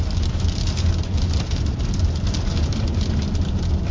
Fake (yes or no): no